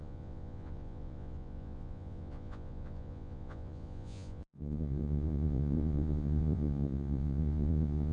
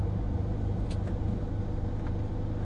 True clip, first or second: second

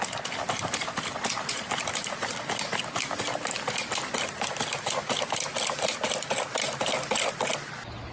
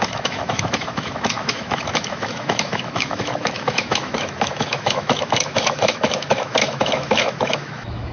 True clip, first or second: first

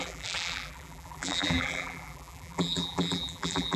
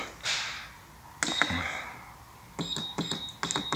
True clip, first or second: second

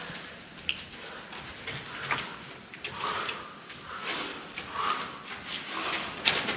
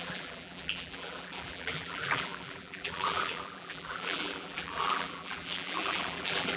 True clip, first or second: first